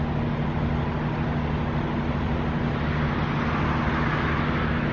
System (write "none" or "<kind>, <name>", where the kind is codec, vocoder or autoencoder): none